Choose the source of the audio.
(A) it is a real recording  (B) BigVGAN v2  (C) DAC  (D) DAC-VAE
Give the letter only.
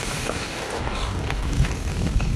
C